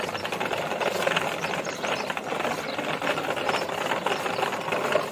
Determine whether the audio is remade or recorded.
recorded